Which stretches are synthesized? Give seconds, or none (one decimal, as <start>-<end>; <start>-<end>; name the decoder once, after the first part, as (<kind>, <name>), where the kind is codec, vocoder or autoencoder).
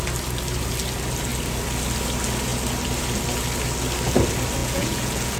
4.6-5.4 (vocoder, Vocos)